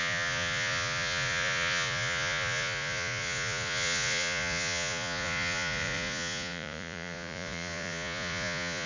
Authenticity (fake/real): fake